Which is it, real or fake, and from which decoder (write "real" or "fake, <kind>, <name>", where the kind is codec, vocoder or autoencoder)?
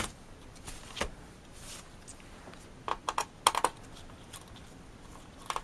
real